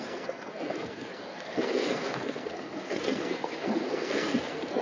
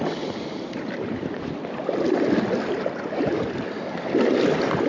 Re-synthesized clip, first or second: first